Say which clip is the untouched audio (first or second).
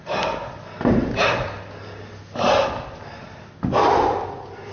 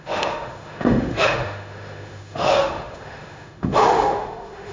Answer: first